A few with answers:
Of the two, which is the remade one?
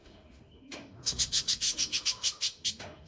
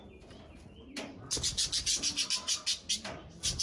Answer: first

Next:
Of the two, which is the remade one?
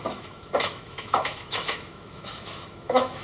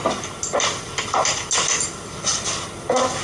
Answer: first